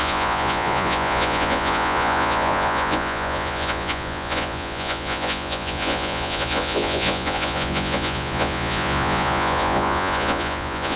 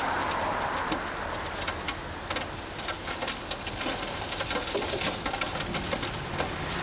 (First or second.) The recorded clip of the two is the second